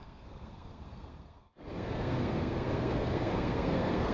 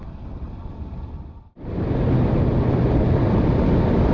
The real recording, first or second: second